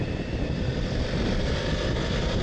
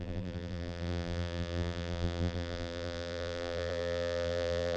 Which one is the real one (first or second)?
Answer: first